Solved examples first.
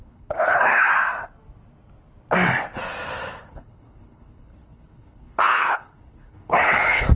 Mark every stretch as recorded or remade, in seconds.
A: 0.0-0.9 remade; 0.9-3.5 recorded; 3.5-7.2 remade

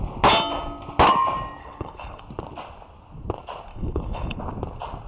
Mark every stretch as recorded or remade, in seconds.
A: 0.0-1.6 recorded; 1.6-2.2 remade; 2.2-3.7 recorded; 3.7-4.4 remade; 4.4-5.1 recorded